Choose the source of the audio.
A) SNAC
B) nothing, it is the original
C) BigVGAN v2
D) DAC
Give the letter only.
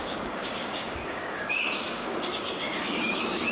D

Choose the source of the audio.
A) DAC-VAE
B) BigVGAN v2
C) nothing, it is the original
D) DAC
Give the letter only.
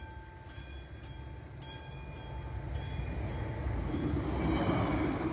C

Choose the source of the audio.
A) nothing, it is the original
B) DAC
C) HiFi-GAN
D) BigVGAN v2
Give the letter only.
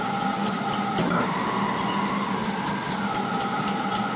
A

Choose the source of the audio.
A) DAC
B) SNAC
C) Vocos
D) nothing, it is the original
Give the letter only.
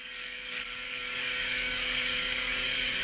A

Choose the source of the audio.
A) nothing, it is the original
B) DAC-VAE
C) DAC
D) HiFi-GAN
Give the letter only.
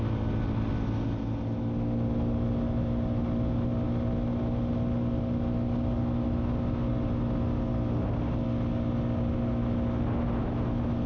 A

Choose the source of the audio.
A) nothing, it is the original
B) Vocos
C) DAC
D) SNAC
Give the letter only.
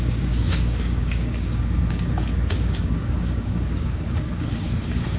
C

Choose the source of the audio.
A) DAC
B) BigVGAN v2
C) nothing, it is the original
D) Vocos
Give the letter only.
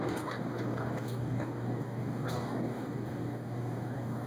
A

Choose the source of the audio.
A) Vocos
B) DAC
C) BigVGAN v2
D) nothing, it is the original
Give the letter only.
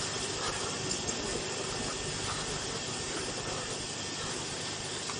D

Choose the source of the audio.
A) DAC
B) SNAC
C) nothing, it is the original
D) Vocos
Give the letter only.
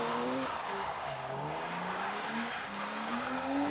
A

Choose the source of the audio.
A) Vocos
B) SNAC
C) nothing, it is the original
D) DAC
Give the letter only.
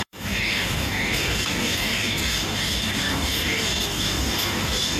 D